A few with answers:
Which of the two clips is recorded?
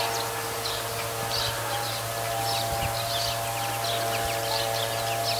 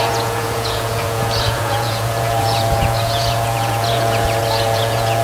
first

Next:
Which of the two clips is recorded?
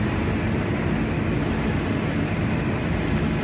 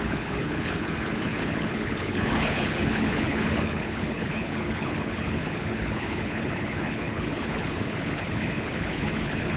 first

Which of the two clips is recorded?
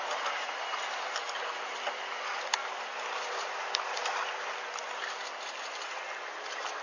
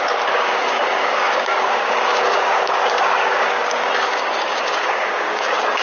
first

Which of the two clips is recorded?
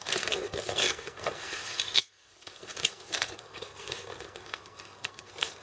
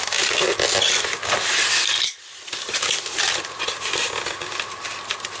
second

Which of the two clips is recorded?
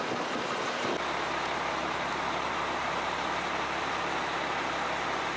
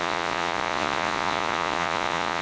first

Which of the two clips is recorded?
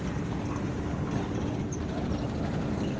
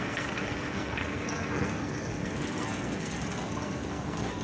first